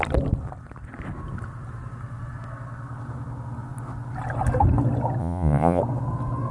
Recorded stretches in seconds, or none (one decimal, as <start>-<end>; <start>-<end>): 0.0-5.2; 5.8-6.5